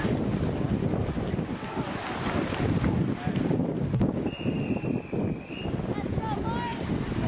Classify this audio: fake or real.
real